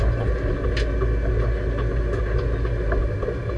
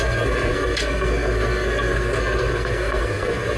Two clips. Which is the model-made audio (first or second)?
second